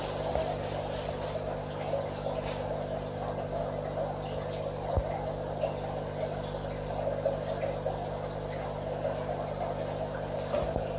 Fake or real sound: real